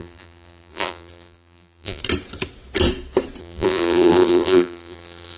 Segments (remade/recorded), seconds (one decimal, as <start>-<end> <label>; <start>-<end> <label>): 0.0-2.0 remade; 2.0-3.4 recorded; 3.4-5.4 remade